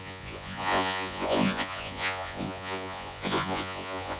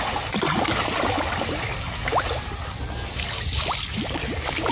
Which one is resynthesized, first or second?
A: first